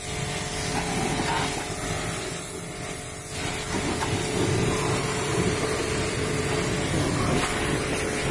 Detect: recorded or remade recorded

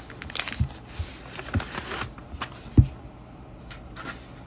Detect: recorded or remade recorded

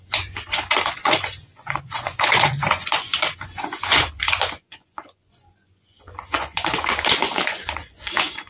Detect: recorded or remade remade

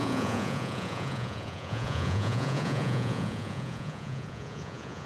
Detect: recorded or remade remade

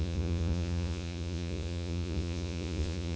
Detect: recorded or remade remade